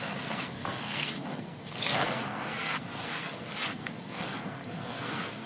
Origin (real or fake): fake